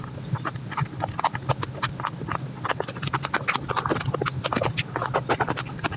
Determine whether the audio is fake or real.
real